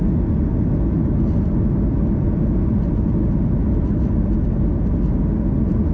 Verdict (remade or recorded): recorded